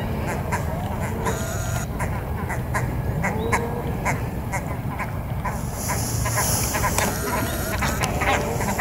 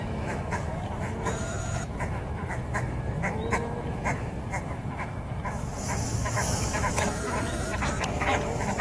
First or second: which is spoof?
second